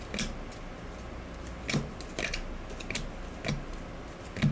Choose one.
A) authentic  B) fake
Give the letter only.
A